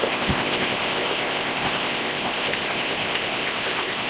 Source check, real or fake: fake